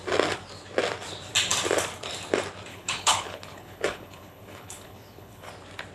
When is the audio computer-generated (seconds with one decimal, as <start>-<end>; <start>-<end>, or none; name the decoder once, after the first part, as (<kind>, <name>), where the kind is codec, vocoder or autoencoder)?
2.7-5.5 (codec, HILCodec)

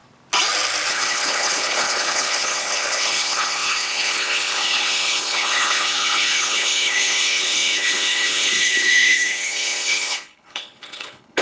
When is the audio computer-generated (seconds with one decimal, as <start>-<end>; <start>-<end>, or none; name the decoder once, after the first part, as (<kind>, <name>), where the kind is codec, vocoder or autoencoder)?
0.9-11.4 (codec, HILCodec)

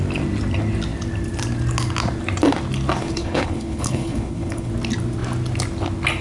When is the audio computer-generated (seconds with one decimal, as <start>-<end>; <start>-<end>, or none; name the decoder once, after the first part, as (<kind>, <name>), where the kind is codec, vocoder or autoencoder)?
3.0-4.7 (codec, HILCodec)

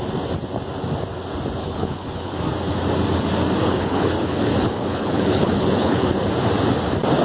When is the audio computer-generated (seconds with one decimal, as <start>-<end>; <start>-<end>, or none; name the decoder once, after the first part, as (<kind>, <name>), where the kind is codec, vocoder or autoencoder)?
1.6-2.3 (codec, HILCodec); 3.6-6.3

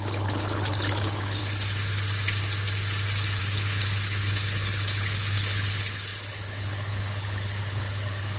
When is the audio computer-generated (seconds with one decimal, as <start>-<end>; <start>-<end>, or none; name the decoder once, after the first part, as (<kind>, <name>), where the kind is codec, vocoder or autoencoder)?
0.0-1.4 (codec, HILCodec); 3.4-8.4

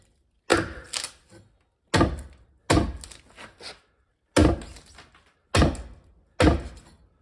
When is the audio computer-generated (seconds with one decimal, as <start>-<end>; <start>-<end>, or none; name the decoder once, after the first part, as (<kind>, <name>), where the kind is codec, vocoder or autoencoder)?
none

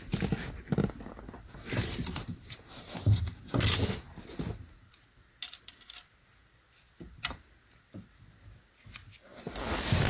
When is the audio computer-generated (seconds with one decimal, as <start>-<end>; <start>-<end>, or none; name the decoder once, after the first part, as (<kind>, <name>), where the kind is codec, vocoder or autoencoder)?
none

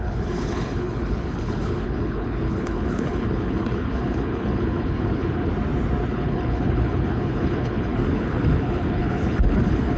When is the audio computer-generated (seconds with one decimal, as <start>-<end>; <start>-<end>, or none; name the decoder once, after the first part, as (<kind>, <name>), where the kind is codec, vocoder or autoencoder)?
0.0-5.5 (codec, HILCodec); 6.1-10.0